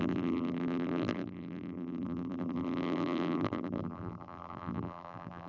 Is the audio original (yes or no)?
no